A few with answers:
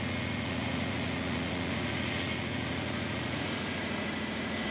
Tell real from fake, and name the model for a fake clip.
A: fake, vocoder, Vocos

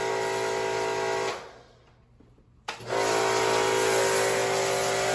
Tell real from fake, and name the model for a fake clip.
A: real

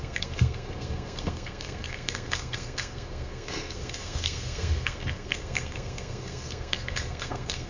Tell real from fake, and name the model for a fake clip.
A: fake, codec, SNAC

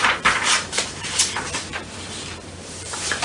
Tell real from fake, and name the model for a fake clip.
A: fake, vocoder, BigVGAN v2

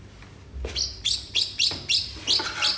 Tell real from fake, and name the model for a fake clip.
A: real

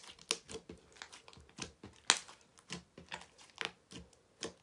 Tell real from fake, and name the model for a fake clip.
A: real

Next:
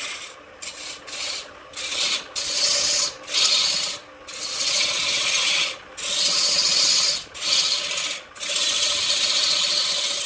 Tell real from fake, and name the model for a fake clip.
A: real